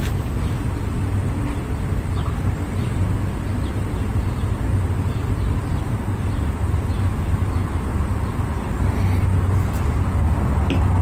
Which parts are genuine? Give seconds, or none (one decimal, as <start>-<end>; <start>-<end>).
0.0-7.9; 10.0-11.0